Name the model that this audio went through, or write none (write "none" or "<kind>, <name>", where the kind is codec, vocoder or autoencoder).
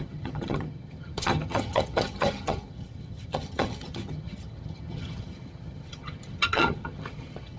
vocoder, HiFi-GAN